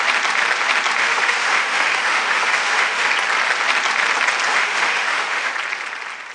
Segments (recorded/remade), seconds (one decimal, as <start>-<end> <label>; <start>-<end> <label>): 0.0-1.0 recorded; 1.0-3.1 remade; 3.1-4.5 recorded; 4.5-5.5 remade; 5.5-6.3 recorded